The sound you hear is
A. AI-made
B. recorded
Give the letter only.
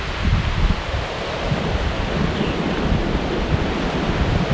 A